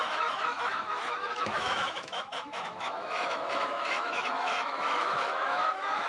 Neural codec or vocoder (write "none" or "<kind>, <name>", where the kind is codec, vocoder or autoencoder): autoencoder, DAC-VAE